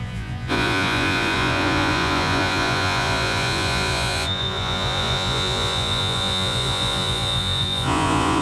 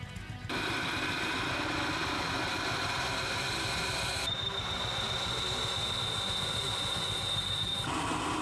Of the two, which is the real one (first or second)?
second